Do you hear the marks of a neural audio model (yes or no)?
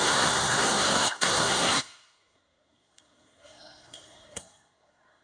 yes